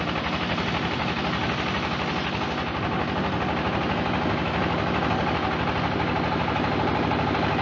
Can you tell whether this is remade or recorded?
recorded